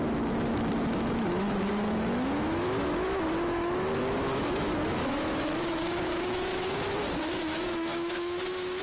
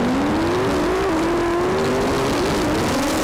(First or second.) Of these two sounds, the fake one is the first